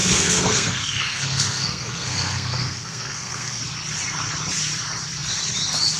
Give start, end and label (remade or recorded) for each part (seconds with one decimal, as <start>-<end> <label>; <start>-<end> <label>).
0.0-3.6 remade; 3.6-6.0 recorded